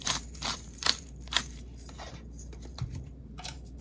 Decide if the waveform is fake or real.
fake